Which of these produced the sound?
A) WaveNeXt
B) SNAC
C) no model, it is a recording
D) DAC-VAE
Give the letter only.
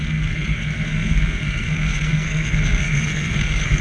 B